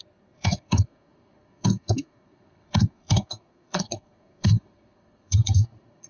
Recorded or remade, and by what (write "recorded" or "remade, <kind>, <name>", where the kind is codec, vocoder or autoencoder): remade, codec, SNAC